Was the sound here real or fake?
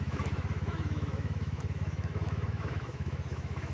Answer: fake